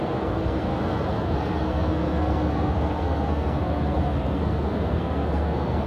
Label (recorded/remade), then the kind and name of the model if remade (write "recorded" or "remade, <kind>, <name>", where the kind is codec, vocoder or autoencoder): remade, codec, SNAC